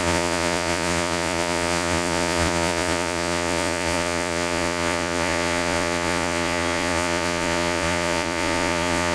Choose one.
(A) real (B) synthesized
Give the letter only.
B